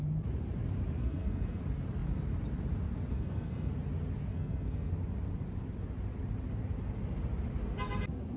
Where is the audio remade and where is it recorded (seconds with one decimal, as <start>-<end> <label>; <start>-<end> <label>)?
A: 0.0-1.0 recorded; 1.0-1.6 remade; 1.6-3.1 recorded; 3.1-3.7 remade; 3.7-4.3 recorded; 4.3-4.9 remade; 4.9-8.4 recorded